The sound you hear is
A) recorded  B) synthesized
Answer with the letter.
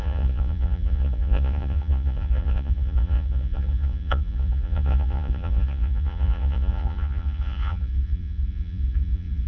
B